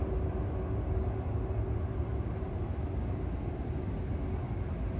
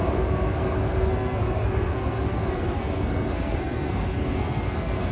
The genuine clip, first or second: first